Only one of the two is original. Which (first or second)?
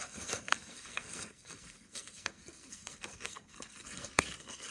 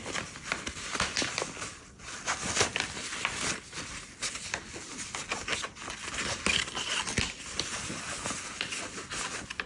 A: second